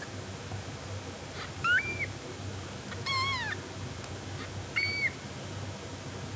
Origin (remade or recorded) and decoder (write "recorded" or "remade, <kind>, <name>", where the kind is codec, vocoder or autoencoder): recorded